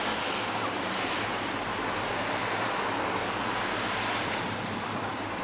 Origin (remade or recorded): recorded